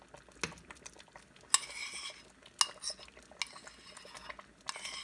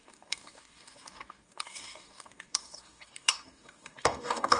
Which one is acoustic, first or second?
first